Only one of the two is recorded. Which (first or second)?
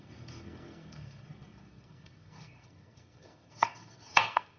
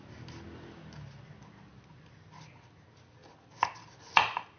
second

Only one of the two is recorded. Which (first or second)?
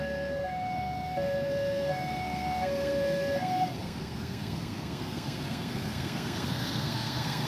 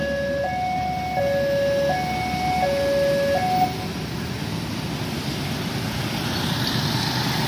second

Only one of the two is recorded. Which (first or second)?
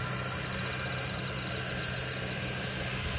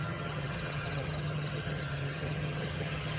first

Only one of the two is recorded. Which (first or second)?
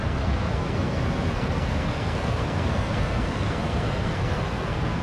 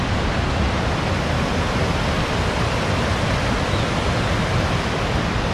second